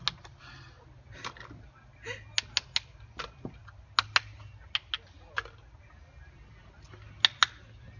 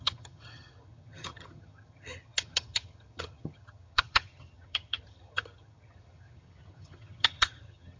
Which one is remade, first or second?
second